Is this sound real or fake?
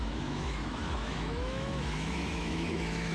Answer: fake